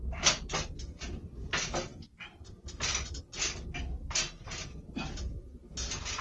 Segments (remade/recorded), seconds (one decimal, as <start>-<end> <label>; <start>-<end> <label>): 0.0-6.2 recorded